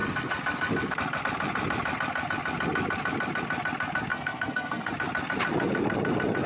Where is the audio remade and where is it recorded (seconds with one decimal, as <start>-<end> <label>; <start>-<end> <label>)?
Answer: 0.0-4.1 recorded; 4.1-4.9 remade; 4.9-6.5 recorded